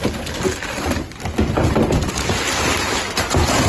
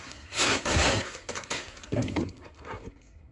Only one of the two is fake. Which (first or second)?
second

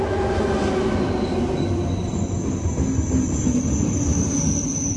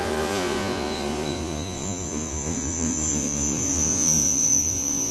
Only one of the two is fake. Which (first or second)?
second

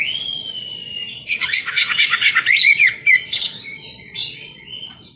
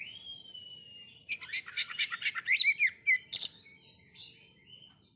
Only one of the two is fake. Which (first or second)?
first